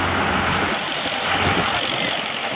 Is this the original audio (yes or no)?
yes